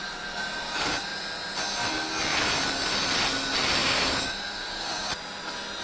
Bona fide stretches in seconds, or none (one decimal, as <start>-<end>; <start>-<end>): 0.0-3.8; 5.1-5.8